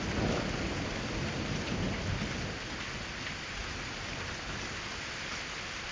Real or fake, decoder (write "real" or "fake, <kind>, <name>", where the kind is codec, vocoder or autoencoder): real